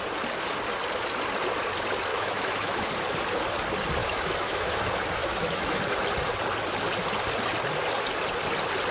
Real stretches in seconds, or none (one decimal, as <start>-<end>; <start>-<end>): 0.0-2.1; 2.8-4.0; 4.8-5.2; 5.8-8.9